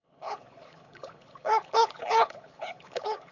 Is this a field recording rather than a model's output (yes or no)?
no